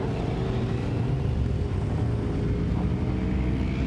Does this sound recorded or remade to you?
recorded